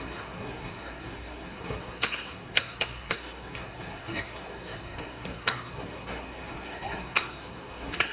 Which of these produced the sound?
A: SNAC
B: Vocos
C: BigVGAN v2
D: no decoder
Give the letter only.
A